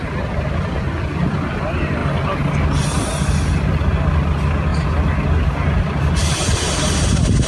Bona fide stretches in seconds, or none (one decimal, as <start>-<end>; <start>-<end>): 0.0-7.5